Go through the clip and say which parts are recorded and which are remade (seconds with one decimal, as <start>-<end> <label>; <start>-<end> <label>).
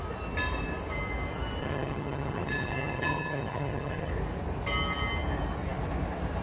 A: 0.0-1.6 recorded; 1.6-4.1 remade; 4.1-6.4 recorded